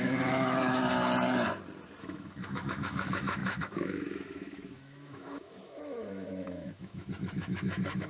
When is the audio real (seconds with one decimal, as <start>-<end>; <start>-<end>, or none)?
0.8-2.0